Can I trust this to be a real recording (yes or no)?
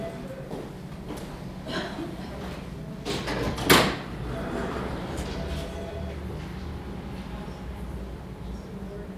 yes